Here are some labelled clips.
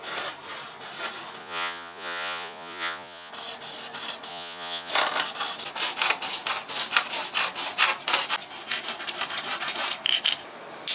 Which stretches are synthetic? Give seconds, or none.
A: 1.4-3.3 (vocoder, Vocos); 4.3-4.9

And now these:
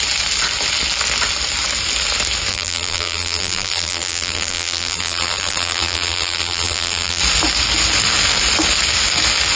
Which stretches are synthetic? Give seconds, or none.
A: 2.5-7.2 (vocoder, BigVGAN v2)

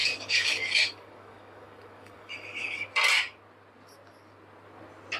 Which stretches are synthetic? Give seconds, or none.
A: 0.0-2.9 (codec, DAC)

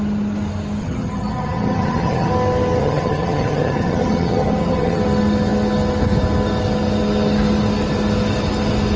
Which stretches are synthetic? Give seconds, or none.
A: 0.8-2.3 (vocoder, HiFi-GAN); 2.8-5.0

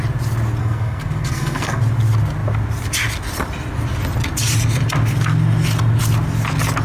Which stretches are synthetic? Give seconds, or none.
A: 0.6-1.8 (codec, SNAC)

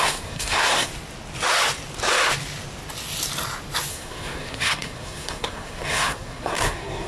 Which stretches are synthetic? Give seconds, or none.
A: 0.0-0.9 (codec, SNAC); 3.9-7.1